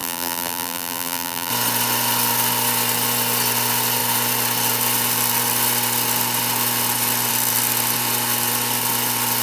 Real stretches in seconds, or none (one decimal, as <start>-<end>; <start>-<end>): 1.5-9.4